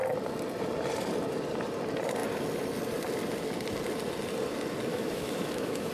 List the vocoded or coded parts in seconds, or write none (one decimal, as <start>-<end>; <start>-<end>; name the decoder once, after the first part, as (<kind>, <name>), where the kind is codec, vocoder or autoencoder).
4.9-5.9 (autoencoder, DAC-VAE)